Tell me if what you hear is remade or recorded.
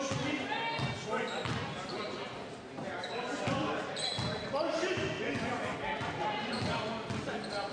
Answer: recorded